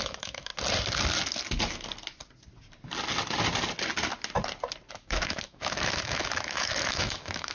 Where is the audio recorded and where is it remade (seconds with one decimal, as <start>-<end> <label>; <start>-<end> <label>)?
0.0-0.5 remade; 0.5-4.9 recorded; 4.9-7.5 remade